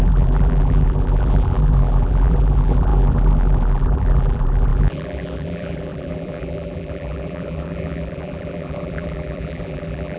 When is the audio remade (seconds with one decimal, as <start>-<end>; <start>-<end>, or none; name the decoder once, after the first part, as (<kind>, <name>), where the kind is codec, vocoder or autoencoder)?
0.0-10.2 (vocoder, BigVGAN v2)